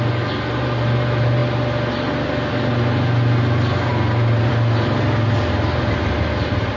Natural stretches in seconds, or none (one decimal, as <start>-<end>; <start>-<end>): 0.0-6.8